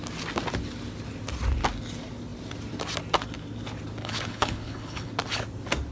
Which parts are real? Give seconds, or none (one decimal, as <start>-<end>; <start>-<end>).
0.0-4.0; 5.1-5.9